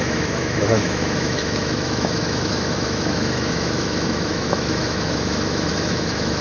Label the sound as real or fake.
fake